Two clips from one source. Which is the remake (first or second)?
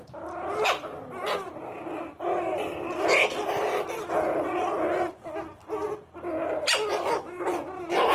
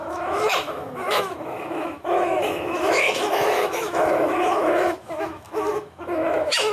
second